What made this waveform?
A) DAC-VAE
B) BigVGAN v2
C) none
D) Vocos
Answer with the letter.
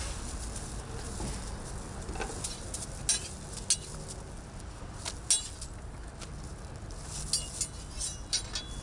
C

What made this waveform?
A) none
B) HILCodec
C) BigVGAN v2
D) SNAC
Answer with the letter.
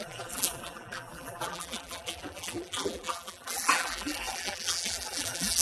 C